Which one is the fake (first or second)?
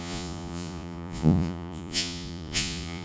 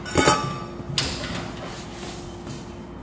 first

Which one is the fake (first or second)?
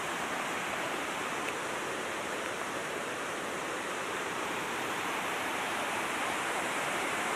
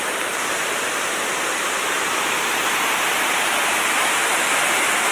first